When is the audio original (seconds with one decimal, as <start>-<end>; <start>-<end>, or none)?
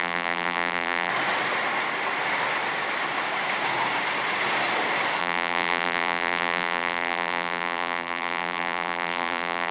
1.1-5.2